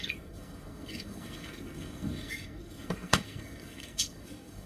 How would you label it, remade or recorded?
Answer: remade